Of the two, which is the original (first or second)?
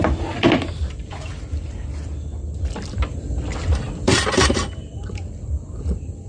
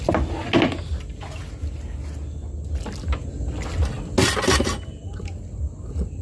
second